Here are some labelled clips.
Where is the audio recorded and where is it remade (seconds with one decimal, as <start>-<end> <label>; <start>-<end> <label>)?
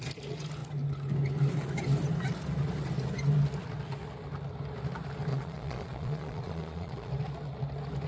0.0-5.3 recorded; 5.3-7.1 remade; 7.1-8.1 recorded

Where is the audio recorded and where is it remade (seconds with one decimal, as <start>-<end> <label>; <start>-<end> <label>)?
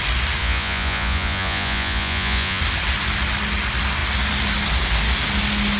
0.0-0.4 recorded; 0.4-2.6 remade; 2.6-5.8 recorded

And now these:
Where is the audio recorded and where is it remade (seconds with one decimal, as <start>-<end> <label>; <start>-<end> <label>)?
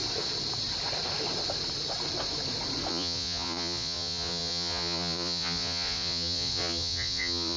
0.0-2.9 recorded; 2.9-7.6 remade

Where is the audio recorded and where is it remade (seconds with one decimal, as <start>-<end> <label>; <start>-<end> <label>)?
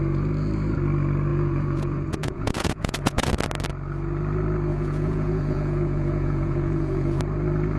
0.0-1.3 recorded; 1.3-3.3 remade; 3.3-4.7 recorded; 4.7-7.2 remade; 7.2-7.8 recorded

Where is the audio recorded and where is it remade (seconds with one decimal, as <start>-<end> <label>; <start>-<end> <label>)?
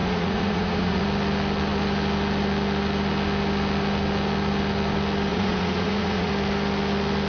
0.0-1.0 remade; 1.0-5.3 recorded; 5.3-6.3 remade; 6.3-7.3 recorded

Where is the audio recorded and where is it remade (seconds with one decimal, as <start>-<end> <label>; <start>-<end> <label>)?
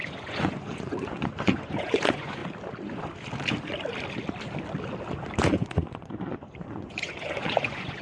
0.0-2.4 remade; 2.4-5.4 recorded; 5.4-8.0 remade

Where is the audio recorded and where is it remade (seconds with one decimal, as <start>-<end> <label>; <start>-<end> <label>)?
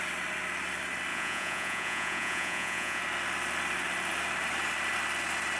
0.0-1.1 recorded; 1.1-3.0 remade; 3.0-5.6 recorded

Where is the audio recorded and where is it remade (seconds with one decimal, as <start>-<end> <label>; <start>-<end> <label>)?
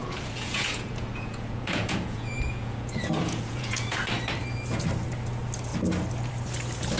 0.0-4.1 remade; 4.1-7.0 recorded